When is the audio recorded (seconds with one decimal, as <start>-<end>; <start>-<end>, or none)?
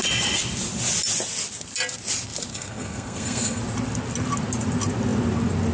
0.0-2.5; 3.6-5.7